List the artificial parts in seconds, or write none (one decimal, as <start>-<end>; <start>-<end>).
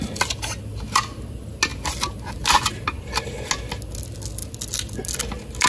none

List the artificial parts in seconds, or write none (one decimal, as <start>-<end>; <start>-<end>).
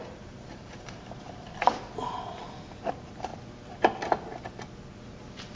0.0-1.5; 2.9-3.3; 4.7-5.6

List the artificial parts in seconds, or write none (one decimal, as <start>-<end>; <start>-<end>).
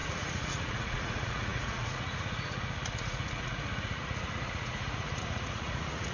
0.0-6.1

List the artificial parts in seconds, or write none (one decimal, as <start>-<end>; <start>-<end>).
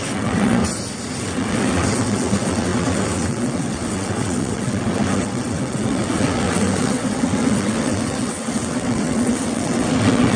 0.0-0.6; 1.2-10.4